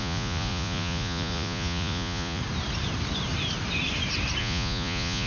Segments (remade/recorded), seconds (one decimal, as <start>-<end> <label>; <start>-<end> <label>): 0.0-2.4 remade; 2.4-4.4 recorded; 4.4-5.3 remade